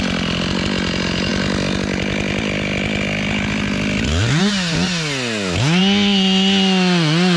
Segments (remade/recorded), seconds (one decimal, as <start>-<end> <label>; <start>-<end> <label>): 0.0-7.4 recorded